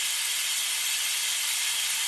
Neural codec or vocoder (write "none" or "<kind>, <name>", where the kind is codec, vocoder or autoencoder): none